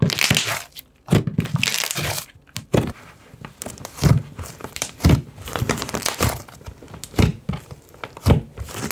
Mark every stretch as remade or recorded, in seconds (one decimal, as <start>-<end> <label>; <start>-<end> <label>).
0.0-1.7 recorded; 1.7-6.7 remade; 6.7-7.3 recorded; 7.3-7.8 remade; 7.8-8.9 recorded